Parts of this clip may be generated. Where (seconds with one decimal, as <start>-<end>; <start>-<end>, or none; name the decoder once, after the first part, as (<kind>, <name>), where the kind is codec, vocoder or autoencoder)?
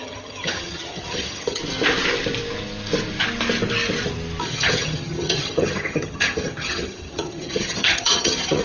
0.0-1.6 (vocoder, HiFi-GAN); 4.4-8.6